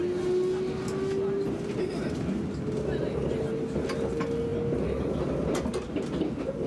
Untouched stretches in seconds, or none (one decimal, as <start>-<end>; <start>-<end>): 0.0-6.7